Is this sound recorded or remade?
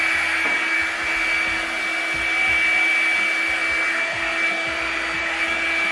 recorded